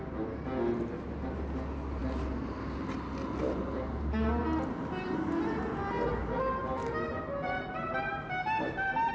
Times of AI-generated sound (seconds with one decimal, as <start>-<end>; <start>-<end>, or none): none